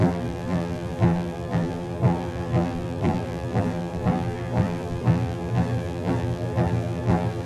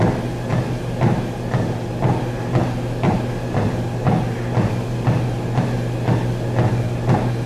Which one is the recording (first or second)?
second